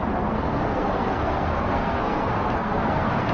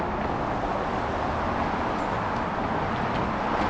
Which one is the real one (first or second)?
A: second